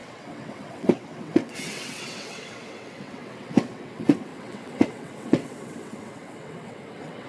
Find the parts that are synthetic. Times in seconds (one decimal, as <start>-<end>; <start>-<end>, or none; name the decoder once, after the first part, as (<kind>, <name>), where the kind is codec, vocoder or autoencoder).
0.0-7.3 (vocoder, WaveNeXt)